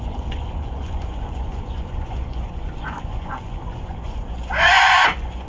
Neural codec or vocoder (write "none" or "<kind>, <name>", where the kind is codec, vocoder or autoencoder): vocoder, Vocos